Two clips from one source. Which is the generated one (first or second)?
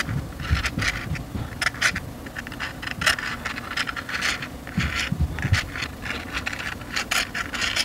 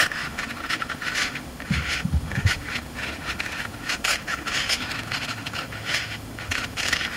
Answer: second